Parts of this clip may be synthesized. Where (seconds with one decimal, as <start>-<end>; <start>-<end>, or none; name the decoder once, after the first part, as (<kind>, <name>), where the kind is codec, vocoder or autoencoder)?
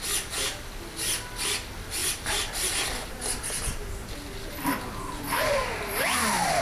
none